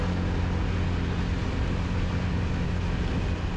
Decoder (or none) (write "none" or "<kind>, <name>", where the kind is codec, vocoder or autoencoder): none